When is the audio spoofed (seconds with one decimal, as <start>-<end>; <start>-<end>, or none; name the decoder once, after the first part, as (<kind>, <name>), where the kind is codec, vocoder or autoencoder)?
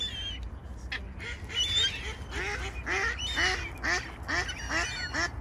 none